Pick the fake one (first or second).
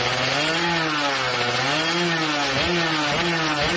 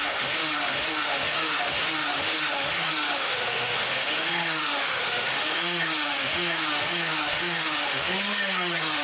second